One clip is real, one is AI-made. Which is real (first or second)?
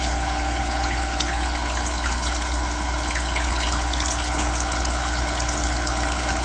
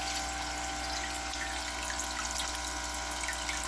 second